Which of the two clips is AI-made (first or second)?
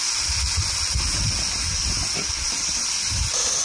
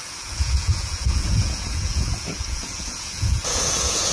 second